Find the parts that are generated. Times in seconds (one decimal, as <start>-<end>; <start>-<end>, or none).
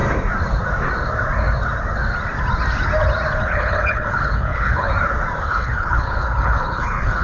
3.4-4.9; 5.4-7.2